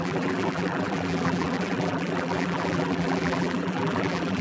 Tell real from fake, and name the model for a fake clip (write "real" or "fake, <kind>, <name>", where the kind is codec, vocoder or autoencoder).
fake, vocoder, BigVGAN v2